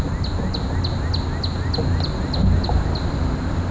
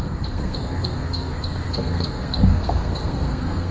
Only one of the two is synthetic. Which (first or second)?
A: second